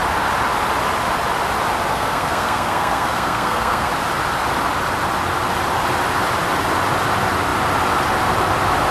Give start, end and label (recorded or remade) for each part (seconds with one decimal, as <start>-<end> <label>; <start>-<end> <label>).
0.0-1.9 recorded; 1.9-3.9 remade; 3.9-8.9 recorded

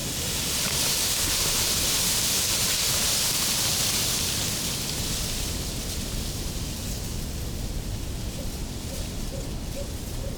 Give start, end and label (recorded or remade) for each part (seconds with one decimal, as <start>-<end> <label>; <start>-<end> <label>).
0.0-10.4 recorded

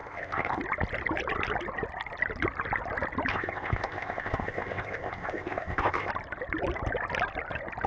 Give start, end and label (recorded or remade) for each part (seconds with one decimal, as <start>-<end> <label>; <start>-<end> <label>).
0.0-0.6 remade; 0.6-3.3 recorded; 3.3-6.1 remade; 6.1-7.9 recorded